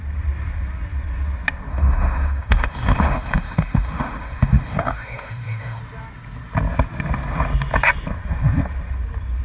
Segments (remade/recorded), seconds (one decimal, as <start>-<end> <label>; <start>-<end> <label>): 0.0-1.7 recorded; 1.7-5.8 remade; 5.8-9.4 recorded